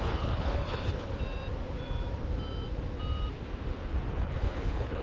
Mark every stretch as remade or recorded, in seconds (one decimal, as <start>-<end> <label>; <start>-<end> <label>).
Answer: 0.0-1.1 remade; 1.1-4.1 recorded; 4.1-5.0 remade